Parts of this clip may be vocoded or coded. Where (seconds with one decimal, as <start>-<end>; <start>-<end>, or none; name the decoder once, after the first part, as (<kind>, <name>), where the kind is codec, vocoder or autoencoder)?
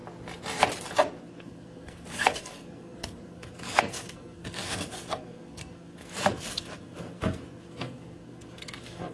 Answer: 1.2-9.1 (codec, SNAC)